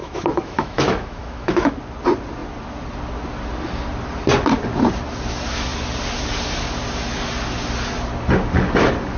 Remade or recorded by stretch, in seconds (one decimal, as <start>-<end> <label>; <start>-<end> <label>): 0.0-1.7 remade; 1.7-9.2 recorded